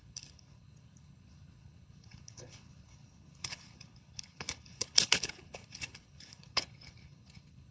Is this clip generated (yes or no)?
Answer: yes